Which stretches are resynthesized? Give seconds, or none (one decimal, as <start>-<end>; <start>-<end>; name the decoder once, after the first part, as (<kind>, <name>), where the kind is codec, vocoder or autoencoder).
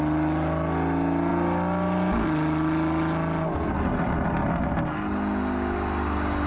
none